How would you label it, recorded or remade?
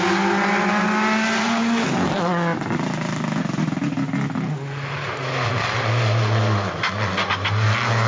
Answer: recorded